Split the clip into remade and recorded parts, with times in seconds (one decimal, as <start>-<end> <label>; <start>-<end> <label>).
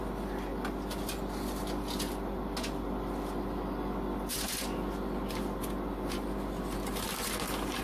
0.0-7.8 recorded